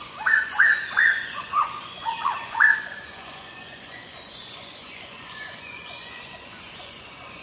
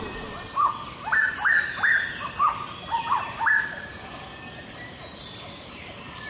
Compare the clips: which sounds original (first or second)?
second